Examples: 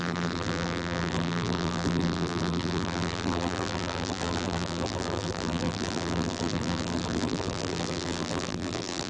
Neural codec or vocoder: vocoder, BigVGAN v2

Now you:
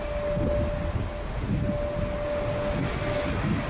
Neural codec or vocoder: none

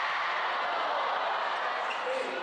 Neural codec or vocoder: none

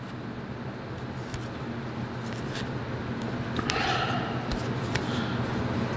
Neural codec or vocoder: none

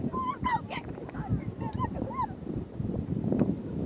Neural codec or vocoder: vocoder, BigVGAN v2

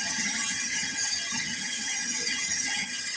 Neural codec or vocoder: vocoder, HiFi-GAN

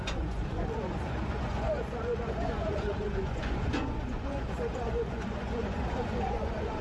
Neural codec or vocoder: vocoder, Vocos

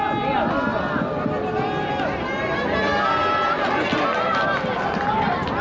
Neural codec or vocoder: none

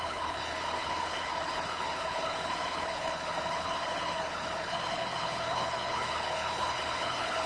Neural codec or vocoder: codec, HILCodec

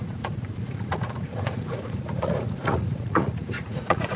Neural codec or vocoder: vocoder, Vocos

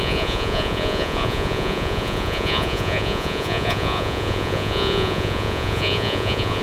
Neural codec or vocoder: vocoder, Vocos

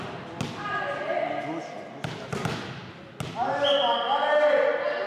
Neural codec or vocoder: none